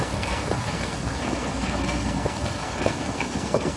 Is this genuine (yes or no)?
no